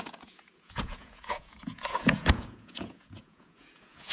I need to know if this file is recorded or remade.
remade